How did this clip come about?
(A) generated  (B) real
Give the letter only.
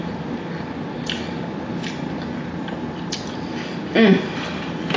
B